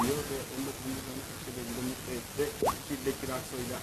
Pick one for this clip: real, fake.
real